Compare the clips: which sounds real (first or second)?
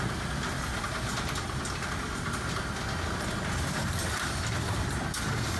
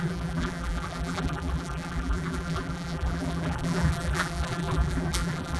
first